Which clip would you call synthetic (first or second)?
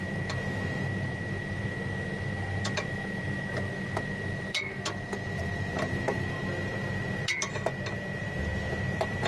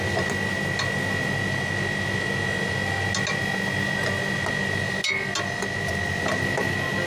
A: first